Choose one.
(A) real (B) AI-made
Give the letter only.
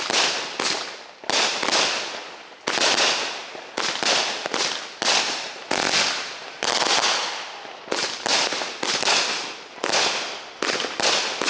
A